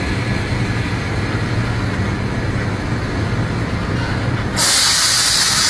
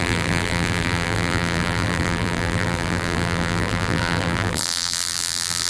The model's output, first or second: second